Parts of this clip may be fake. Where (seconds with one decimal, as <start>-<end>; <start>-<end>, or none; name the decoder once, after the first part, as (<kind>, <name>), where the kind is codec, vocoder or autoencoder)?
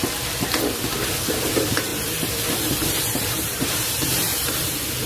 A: 1.3-5.1 (vocoder, BigVGAN v2)